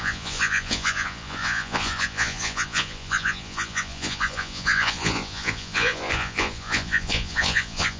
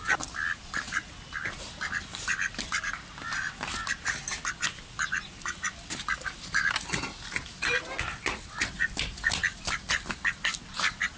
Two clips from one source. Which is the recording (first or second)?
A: second